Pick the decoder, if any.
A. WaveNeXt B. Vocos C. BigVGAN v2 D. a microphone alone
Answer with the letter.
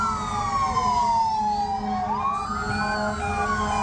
D